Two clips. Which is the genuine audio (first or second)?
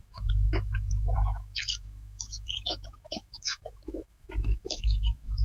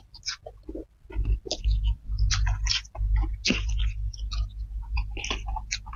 second